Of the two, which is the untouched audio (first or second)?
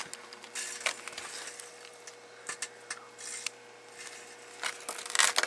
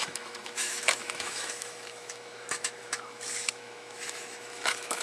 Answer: first